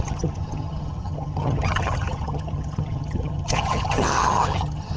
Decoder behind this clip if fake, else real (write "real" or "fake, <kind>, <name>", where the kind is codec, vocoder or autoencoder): fake, vocoder, HiFi-GAN